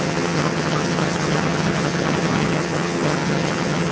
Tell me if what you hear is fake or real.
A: fake